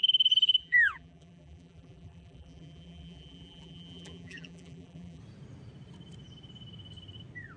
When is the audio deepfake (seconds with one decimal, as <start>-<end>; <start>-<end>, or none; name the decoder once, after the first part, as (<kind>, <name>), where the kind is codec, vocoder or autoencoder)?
0.6-5.2 (vocoder, BigVGAN v2)